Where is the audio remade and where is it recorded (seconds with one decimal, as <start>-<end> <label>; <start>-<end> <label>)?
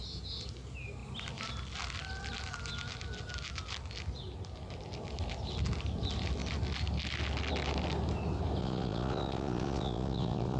0.0-8.6 recorded; 8.6-10.6 remade